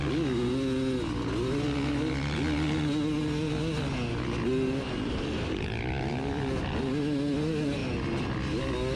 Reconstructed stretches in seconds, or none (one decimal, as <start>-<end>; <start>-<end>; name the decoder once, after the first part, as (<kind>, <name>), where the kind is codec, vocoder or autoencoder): none